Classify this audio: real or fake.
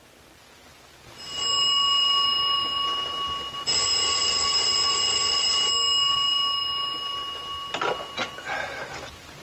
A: real